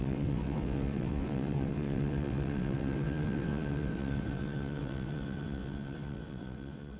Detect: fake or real fake